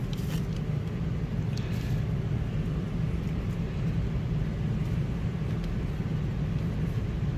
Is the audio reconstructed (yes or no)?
no